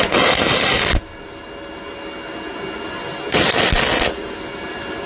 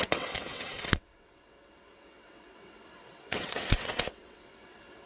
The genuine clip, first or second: first